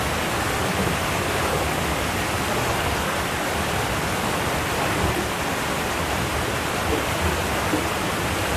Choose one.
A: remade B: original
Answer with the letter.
B